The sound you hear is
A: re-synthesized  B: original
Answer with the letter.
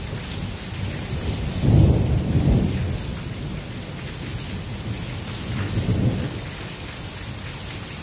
B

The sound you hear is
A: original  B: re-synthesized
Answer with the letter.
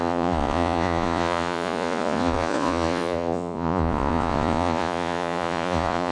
B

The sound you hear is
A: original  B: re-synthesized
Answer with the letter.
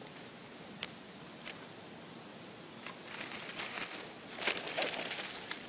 A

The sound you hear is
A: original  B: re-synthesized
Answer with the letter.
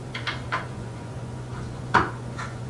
B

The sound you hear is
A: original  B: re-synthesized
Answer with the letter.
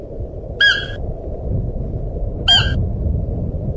A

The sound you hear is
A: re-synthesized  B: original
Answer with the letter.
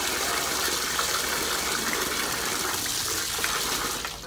B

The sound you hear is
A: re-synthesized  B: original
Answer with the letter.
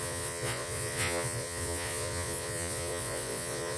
A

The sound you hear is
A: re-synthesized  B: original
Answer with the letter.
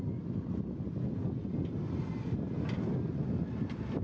B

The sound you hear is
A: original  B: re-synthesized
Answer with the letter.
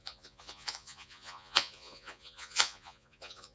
B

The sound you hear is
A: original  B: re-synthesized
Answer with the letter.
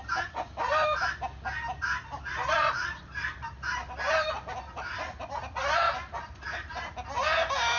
A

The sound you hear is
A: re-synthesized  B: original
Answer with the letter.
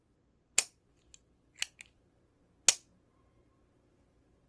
B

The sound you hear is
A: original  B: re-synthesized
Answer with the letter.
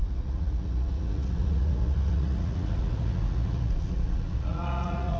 B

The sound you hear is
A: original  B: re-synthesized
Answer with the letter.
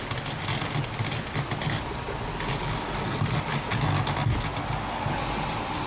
A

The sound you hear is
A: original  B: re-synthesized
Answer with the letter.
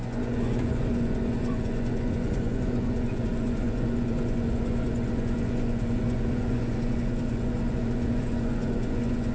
B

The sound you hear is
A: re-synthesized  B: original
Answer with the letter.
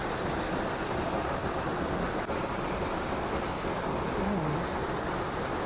B